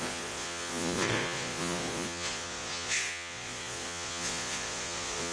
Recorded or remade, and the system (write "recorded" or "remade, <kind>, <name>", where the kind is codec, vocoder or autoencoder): remade, vocoder, Vocos